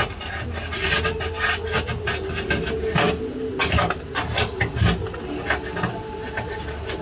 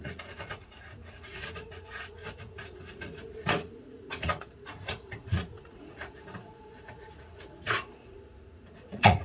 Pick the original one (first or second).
first